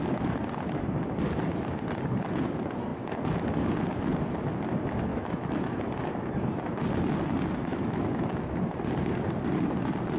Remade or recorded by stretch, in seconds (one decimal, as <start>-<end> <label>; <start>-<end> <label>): 0.0-5.1 recorded; 5.1-5.9 remade; 5.9-7.7 recorded; 7.7-8.6 remade; 8.6-10.2 recorded